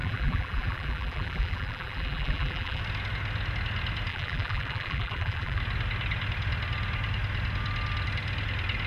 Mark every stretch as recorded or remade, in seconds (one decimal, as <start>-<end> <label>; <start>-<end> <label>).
0.0-2.8 remade; 2.8-4.1 recorded; 4.1-5.6 remade; 5.6-8.9 recorded